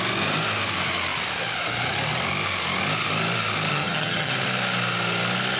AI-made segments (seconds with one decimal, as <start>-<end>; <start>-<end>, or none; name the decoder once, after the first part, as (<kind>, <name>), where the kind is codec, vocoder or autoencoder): 3.7-4.3 (vocoder, HiFi-GAN)